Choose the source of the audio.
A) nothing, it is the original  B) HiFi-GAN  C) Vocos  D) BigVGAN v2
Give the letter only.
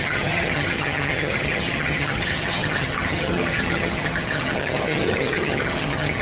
B